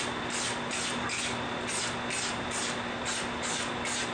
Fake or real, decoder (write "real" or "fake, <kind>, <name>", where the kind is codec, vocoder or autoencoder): real